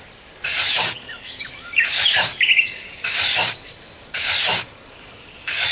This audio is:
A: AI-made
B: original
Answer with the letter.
A